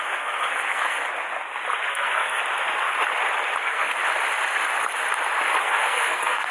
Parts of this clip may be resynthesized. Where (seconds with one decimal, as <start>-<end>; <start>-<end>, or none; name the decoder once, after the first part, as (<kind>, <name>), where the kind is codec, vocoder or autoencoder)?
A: 0.0-1.1 (codec, SNAC); 1.9-2.4; 3.6-4.0; 5.6-6.5